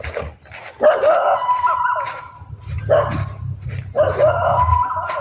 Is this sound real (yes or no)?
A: yes